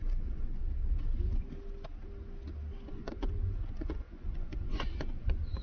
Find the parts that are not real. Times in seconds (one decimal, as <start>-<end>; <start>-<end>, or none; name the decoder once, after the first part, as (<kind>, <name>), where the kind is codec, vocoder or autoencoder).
0.0-0.6 (vocoder, Vocos); 2.9-5.6